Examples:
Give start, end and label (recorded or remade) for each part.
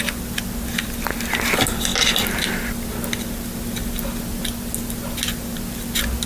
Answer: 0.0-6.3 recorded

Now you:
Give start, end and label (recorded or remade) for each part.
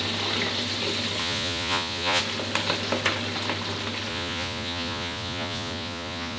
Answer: 0.0-1.2 recorded; 1.2-2.2 remade; 2.2-4.1 recorded; 4.1-6.4 remade